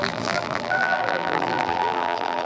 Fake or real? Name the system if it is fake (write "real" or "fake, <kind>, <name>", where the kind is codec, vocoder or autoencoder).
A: fake, vocoder, BigVGAN v2